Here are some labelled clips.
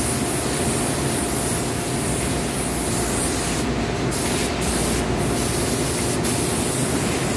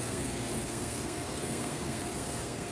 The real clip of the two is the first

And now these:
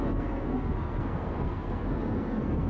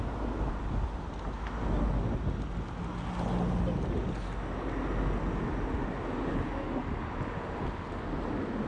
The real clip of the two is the second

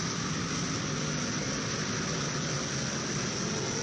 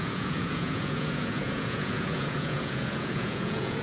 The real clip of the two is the first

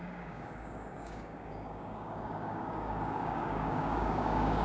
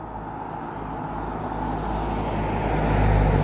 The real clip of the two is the second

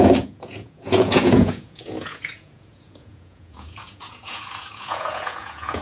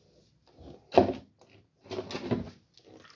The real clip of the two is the second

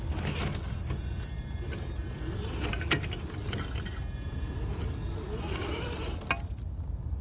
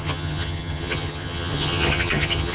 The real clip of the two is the first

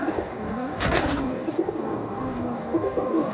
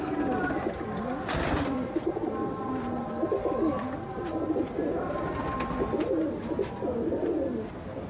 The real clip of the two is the second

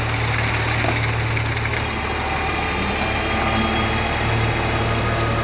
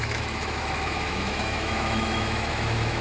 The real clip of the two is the first